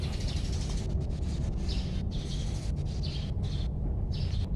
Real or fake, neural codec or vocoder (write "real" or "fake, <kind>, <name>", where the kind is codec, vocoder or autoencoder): real